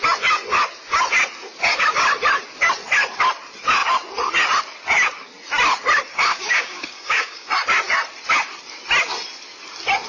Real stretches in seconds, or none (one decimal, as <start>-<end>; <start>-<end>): 0.0-6.3; 7.5-10.1